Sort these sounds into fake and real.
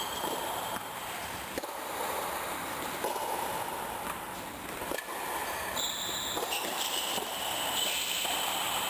fake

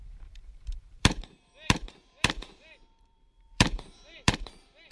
fake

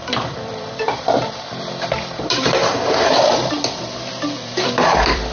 fake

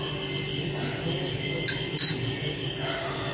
real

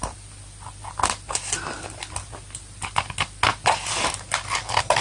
real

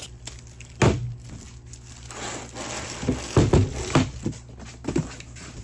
real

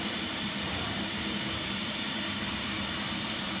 fake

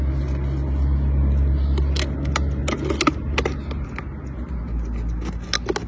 real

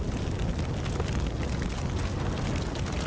real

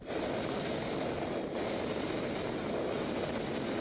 real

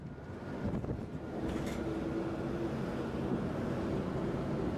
real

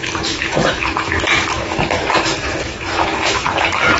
fake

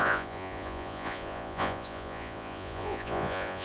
fake